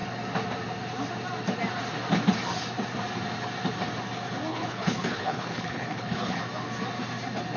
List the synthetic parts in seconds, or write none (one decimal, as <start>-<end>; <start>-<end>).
4.5-6.4